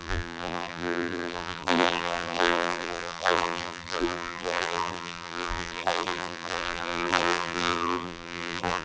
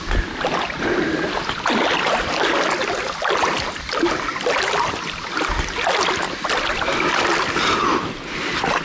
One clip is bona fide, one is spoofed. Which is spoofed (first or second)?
first